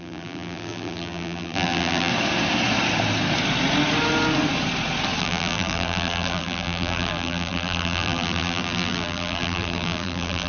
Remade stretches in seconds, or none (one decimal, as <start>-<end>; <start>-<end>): 0.0-2.1; 5.2-10.5